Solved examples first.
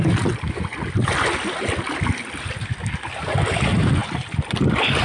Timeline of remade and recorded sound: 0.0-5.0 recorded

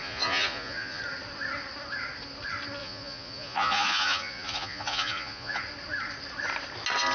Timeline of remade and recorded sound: 0.0-1.0 remade; 1.0-2.8 recorded; 2.8-5.6 remade; 5.6-7.1 recorded

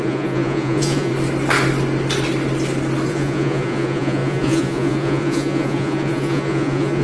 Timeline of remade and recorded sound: 0.0-1.1 remade; 1.1-3.1 recorded; 3.1-7.0 remade

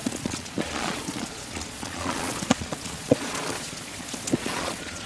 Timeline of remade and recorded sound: 0.0-5.1 remade